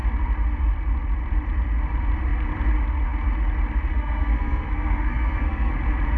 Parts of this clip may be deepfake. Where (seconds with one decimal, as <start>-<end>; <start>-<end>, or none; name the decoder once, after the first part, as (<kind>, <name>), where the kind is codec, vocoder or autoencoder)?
3.9-5.7 (codec, SNAC)